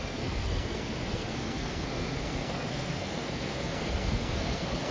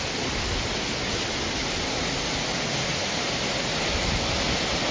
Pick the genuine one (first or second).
second